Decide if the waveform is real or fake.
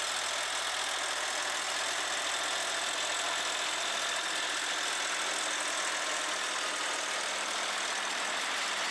real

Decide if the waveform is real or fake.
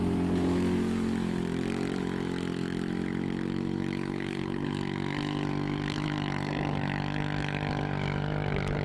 fake